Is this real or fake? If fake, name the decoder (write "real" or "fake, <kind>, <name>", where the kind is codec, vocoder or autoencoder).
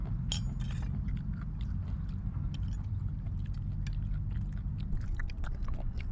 real